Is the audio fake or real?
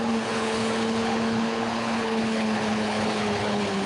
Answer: fake